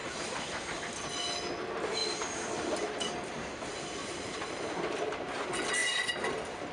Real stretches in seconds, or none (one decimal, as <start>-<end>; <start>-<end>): 0.0-2.0; 3.1-4.0; 5.2-6.7